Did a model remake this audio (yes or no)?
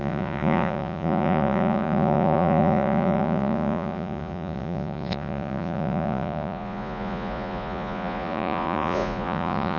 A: yes